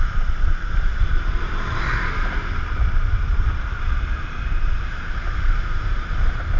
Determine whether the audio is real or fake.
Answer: fake